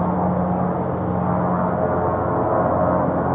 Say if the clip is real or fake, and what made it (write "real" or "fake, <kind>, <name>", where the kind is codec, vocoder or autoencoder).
real